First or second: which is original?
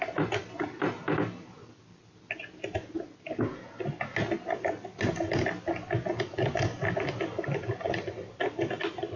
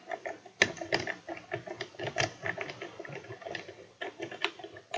first